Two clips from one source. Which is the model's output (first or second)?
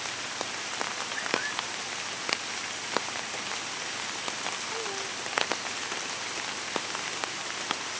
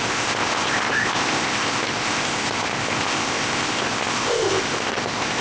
second